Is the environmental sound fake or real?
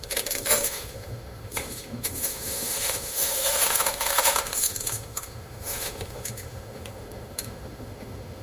fake